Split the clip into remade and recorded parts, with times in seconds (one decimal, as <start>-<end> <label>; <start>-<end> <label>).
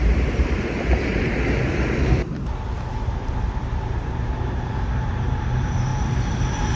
0.0-1.1 remade; 1.1-2.9 recorded; 2.9-6.8 remade